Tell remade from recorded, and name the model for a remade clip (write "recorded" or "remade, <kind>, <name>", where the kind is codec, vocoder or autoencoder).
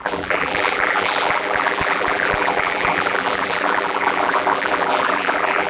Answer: remade, vocoder, BigVGAN v2